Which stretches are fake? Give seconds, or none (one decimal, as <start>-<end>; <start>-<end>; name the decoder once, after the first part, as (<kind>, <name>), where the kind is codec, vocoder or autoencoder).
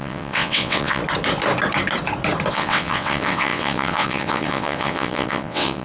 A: 0.0-1.0 (vocoder, WaveNeXt); 2.5-5.8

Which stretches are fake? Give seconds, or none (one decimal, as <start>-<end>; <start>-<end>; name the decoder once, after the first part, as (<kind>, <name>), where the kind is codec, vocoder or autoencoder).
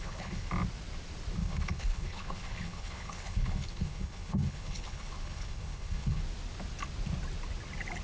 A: 0.0-0.5 (codec, HILCodec); 1.4-6.2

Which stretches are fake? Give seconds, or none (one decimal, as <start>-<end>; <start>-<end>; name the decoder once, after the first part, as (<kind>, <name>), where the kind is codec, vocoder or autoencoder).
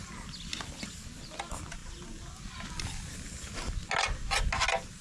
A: none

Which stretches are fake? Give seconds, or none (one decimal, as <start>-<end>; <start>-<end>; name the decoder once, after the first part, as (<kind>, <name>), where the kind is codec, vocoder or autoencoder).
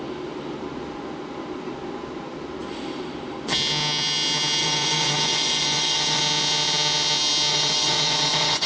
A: 4.6-6.2 (vocoder, Vocos); 7.5-8.7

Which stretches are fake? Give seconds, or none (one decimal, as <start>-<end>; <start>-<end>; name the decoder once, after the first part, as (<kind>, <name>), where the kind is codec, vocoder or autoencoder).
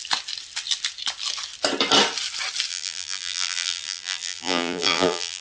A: 2.7-5.4 (vocoder, BigVGAN v2)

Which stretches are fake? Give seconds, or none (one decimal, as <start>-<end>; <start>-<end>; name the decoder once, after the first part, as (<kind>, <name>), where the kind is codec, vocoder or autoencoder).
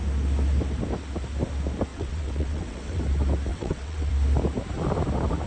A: 1.9-3.0 (vocoder, WaveNeXt); 3.5-4.1